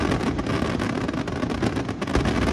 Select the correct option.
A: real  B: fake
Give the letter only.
A